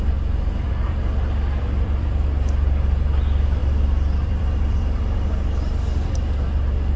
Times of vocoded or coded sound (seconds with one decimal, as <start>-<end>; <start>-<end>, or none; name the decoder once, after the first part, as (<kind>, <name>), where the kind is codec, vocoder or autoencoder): 0.0-7.0 (vocoder, BigVGAN v2)